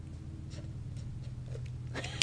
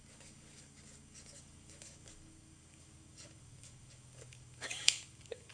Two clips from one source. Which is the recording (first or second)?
first